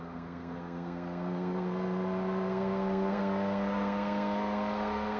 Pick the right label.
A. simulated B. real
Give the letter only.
A